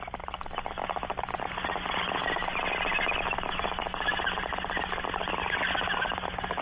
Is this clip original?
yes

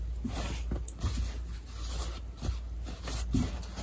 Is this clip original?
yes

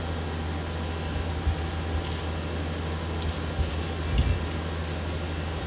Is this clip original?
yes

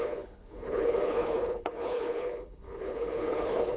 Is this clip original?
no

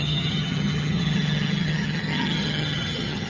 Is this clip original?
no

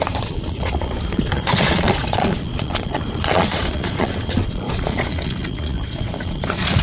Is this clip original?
no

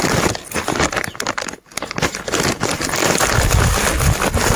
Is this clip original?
yes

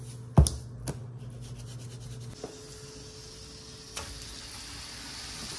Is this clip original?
yes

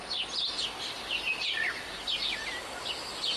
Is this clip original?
yes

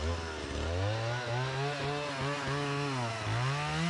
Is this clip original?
yes